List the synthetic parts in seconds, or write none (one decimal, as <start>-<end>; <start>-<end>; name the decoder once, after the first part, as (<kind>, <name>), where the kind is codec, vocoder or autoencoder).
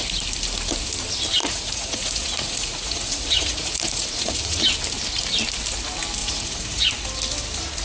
1.4-4.6 (vocoder, Vocos); 6.2-6.8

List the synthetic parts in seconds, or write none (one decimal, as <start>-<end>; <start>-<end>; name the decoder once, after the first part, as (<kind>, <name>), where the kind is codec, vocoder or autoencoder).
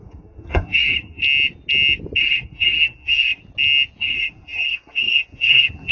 0.0-1.2 (codec, SNAC); 2.2-3.4; 4.0-5.9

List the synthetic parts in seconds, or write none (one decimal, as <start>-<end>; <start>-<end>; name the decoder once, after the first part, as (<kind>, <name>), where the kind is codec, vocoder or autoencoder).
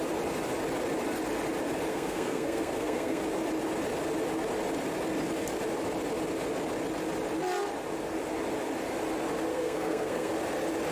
1.9-3.2 (codec, SNAC); 9.5-10.3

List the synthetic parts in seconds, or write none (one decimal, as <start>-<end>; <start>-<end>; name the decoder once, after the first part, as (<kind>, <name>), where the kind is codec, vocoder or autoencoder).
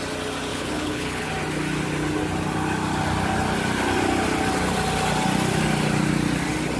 0.5-1.3 (codec, HILCodec)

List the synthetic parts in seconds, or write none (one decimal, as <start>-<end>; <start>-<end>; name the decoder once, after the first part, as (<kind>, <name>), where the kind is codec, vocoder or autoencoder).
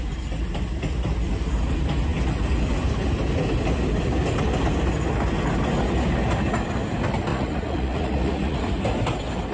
7.3-8.6 (vocoder, Vocos)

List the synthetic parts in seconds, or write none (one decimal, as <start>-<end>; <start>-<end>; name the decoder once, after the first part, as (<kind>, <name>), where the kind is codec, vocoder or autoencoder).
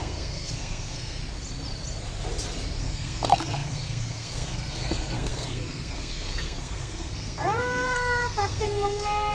0.0-1.2 (codec, SNAC); 2.8-9.3